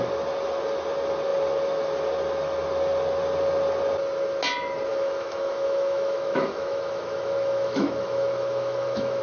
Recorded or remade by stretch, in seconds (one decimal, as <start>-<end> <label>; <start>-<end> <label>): 0.0-4.9 recorded; 4.9-9.2 remade